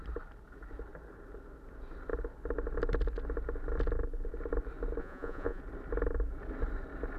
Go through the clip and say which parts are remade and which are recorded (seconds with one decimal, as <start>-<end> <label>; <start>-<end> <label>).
0.0-5.0 recorded; 5.0-5.6 remade; 5.6-7.2 recorded